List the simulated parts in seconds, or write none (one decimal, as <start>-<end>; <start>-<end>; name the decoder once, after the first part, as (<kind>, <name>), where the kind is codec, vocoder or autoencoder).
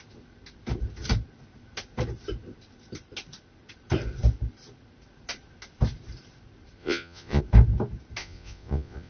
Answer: 6.8-7.4 (vocoder, Vocos); 8.2-9.1